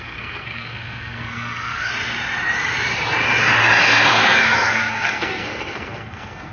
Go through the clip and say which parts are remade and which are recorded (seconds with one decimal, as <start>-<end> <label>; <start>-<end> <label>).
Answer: 0.0-1.9 remade; 1.9-3.8 recorded; 3.8-6.5 remade